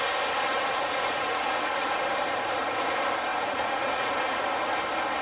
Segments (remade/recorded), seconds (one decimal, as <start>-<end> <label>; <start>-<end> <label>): 0.0-0.5 recorded; 0.5-2.0 remade; 2.0-3.3 recorded; 3.3-4.1 remade; 4.1-5.2 recorded